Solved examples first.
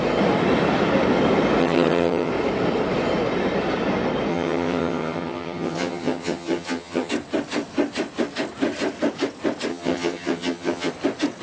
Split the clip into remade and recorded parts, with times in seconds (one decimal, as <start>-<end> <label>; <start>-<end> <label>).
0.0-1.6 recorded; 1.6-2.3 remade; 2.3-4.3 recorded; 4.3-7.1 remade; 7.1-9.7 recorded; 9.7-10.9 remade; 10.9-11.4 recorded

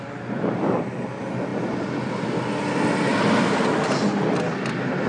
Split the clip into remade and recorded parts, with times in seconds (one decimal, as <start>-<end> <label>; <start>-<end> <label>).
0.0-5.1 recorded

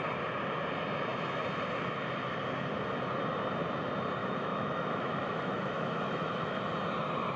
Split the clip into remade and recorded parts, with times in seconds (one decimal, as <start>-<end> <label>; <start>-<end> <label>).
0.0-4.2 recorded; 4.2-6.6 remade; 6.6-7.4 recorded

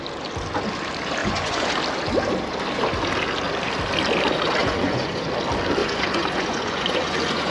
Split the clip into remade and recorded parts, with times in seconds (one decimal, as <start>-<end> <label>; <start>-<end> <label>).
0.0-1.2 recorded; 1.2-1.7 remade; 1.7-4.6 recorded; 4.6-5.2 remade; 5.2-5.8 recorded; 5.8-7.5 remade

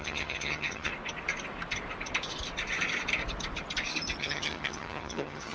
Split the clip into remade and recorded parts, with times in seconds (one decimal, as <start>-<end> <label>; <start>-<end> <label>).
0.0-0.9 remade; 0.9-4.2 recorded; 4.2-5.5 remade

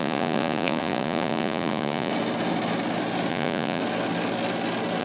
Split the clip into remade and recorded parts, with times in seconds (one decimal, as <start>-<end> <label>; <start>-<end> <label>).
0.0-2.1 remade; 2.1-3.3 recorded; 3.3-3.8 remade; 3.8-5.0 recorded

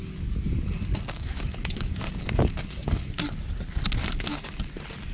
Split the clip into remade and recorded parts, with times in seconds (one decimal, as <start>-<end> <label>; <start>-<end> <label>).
0.0-3.1 remade; 3.1-4.0 recorded; 4.0-4.6 remade; 4.6-5.1 recorded